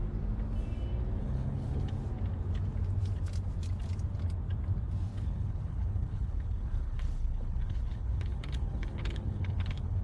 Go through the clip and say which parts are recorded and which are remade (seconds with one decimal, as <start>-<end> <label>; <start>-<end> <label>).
0.0-1.2 recorded; 1.2-1.9 remade; 1.9-5.1 recorded; 5.1-10.0 remade